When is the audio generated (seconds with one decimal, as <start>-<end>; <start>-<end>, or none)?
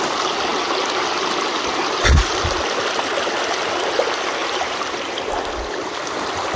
4.4-5.3